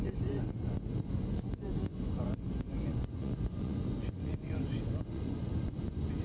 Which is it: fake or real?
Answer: fake